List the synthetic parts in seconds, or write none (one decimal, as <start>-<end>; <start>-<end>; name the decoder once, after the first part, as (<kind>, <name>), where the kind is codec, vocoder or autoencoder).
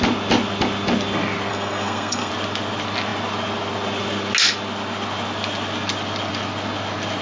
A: 1.5-2.3 (codec, SNAC)